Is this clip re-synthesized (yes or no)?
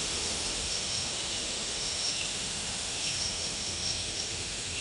yes